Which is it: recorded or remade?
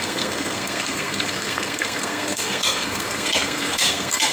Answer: remade